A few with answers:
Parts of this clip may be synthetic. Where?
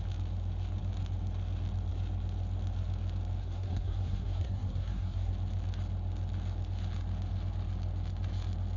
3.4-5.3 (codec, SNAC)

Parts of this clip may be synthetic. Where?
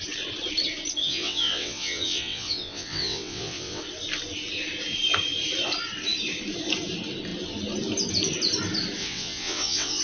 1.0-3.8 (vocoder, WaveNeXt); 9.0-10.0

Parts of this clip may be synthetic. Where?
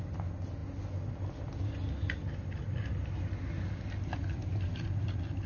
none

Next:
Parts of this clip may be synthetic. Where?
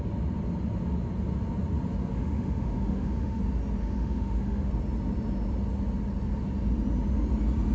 2.1-3.4 (autoencoder, DAC-VAE); 3.8-4.7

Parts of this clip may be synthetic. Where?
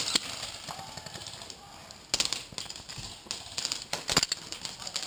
none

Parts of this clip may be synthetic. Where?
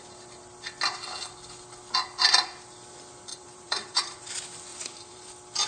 3.3-4.2 (vocoder, BigVGAN v2); 4.7-5.3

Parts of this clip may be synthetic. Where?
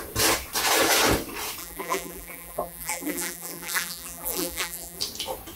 1.6-5.0 (vocoder, BigVGAN v2)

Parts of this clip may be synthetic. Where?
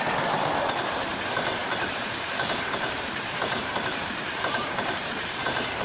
1.6-5.1 (vocoder, BigVGAN v2)